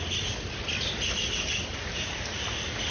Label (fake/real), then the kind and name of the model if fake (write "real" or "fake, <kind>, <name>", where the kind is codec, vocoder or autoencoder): real